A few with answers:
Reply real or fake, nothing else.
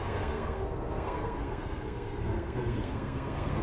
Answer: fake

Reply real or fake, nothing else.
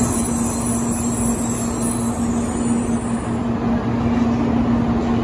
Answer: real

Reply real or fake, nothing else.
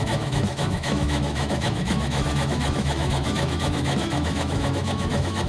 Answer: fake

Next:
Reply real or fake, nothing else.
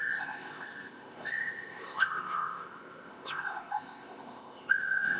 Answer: fake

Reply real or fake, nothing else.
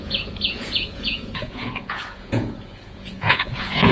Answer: fake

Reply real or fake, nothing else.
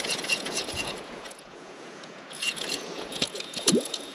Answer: fake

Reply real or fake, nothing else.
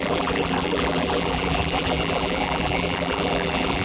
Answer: fake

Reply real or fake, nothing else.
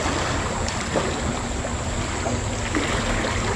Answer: real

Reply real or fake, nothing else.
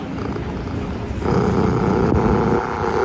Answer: real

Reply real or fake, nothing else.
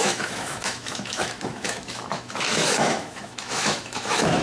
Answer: fake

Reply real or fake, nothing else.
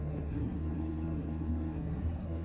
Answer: fake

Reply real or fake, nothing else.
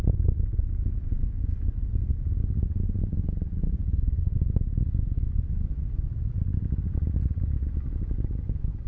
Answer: real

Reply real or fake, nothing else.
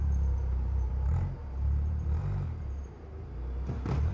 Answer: fake